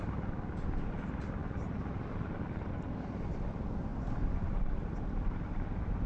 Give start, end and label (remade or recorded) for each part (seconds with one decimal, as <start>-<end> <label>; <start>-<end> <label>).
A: 0.0-1.4 recorded; 1.4-2.7 remade; 2.7-3.9 recorded; 3.9-5.2 remade; 5.2-6.1 recorded